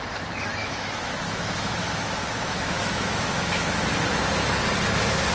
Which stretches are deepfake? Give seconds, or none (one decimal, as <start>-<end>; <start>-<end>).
0.6-3.8